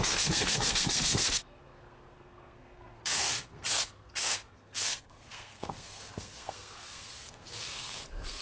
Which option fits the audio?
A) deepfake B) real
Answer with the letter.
A